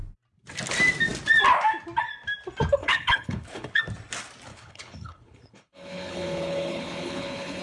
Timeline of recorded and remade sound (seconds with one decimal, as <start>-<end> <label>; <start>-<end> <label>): 0.0-2.8 recorded; 2.8-3.8 remade; 3.8-4.5 recorded; 4.5-7.6 remade